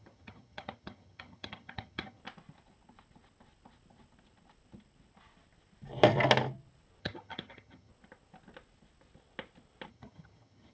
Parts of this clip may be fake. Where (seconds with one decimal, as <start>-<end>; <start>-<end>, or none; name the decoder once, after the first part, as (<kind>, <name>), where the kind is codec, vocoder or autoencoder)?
0.0-2.2 (vocoder, HiFi-GAN); 7.0-7.9; 9.9-10.7